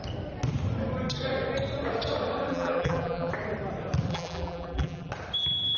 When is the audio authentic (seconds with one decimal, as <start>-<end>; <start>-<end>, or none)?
0.0-2.5; 3.3-4.1; 5.1-5.8